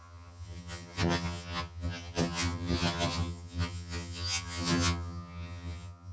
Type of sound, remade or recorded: remade